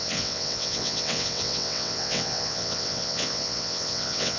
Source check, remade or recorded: remade